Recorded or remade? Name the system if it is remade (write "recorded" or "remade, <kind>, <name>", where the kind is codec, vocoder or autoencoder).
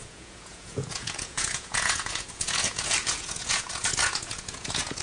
remade, vocoder, Vocos